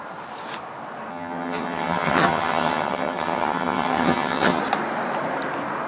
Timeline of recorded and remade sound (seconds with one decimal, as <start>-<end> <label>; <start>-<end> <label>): 0.0-1.1 recorded; 1.1-4.6 remade; 4.6-5.9 recorded